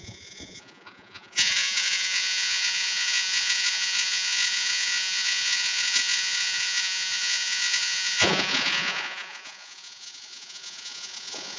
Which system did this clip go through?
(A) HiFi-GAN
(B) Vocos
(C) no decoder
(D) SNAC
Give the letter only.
B